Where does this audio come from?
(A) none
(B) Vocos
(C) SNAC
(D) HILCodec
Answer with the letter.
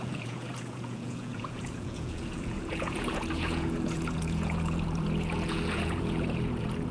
B